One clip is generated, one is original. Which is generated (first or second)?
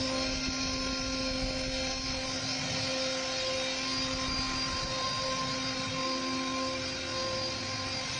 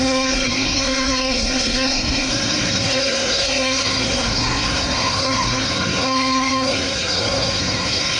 second